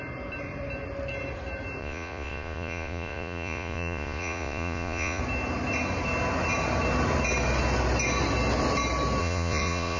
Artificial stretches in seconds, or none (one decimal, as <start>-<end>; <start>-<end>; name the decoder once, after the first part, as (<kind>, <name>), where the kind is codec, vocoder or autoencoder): 1.8-5.2 (vocoder, Vocos); 9.2-10.0